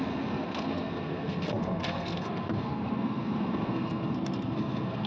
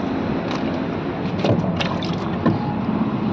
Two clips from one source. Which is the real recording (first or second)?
second